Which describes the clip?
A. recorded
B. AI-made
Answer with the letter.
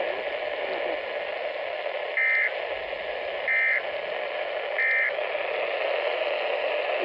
A